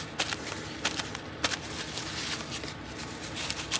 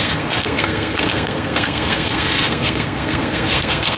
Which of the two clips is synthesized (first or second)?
second